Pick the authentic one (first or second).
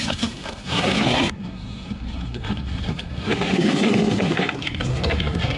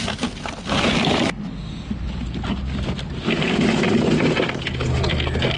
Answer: second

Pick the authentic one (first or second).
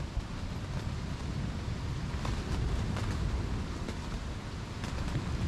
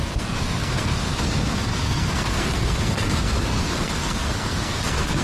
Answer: first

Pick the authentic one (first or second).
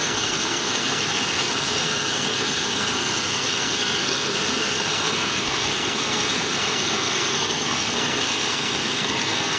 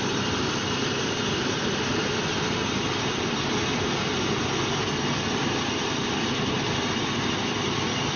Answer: second